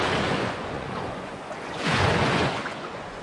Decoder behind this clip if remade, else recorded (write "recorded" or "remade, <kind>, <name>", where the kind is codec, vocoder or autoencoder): remade, vocoder, Vocos